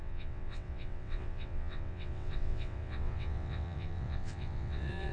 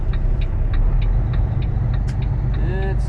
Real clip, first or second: second